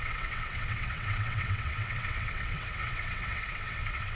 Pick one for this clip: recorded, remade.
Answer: remade